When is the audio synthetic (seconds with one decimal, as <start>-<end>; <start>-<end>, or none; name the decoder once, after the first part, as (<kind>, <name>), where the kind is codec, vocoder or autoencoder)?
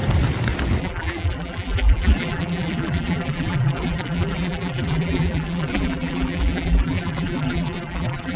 0.8-8.4 (vocoder, BigVGAN v2)